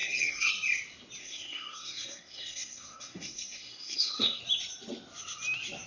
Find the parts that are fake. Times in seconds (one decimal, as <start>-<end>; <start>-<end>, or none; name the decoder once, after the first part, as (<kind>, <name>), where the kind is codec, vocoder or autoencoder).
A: 0.0-0.5 (codec, SNAC); 1.2-4.4